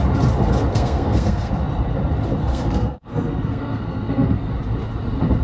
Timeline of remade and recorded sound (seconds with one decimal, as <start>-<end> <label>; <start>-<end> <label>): 0.0-0.7 recorded; 0.7-1.5 remade; 1.5-2.4 recorded; 2.4-4.5 remade; 4.5-5.4 recorded